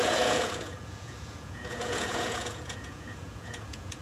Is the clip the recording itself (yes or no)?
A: no